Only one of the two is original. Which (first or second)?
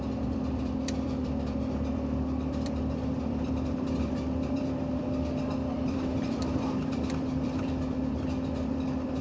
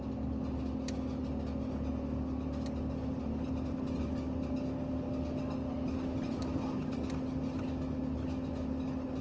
second